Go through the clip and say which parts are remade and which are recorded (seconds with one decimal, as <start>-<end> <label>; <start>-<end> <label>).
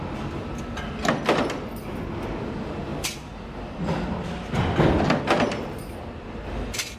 0.0-7.0 recorded